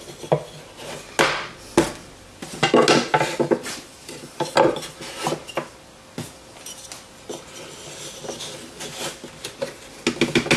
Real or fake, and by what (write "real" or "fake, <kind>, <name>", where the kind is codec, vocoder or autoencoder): real